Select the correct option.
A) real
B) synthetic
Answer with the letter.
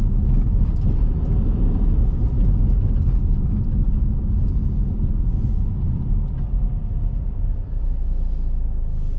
A